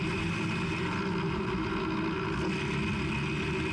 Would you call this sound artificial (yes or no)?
no